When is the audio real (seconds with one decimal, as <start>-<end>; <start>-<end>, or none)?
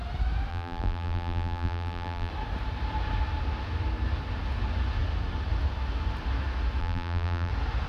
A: 0.0-0.5; 2.3-6.8; 7.5-7.9